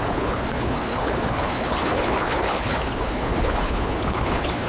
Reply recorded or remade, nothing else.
remade